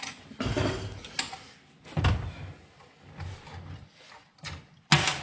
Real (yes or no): yes